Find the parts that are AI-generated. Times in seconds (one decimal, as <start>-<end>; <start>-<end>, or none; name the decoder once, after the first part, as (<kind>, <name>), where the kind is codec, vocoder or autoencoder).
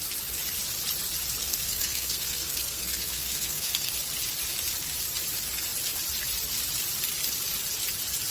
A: 1.4-3.9 (codec, SNAC)